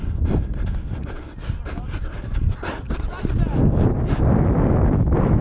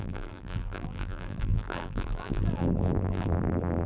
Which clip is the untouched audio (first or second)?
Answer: first